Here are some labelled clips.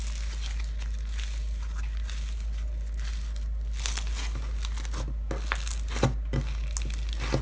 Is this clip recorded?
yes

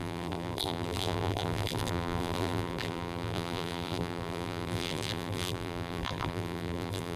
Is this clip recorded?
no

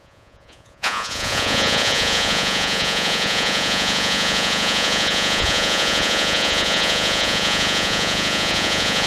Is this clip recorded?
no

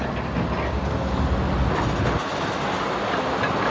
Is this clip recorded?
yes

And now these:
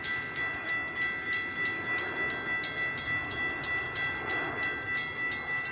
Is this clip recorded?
yes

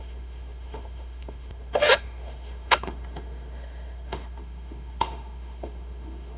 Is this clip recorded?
no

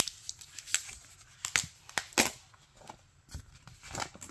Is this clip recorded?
yes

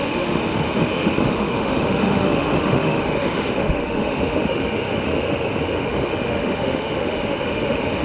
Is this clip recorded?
no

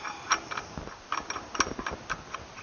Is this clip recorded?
yes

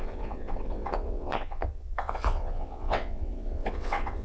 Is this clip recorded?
no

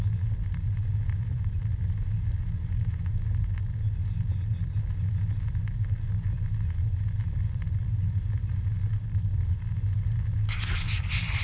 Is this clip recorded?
yes